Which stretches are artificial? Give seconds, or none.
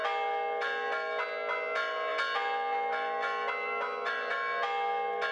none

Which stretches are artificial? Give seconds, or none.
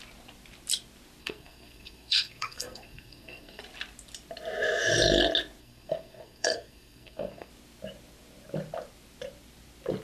1.2-3.6 (codec, SNAC); 5.6-7.5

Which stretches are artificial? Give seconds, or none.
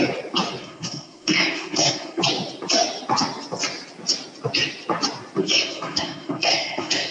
0.6-2.2 (codec, SNAC); 5.4-7.1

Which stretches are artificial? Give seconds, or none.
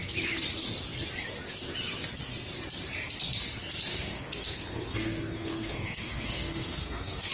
3.9-7.3 (codec, SNAC)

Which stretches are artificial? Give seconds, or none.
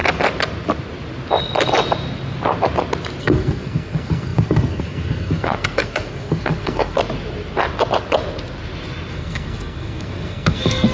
3.2-7.0 (codec, SNAC); 9.1-10.9